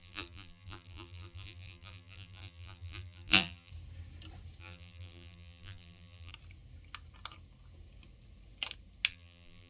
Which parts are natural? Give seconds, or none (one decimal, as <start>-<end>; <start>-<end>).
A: 3.7-4.6; 6.3-9.1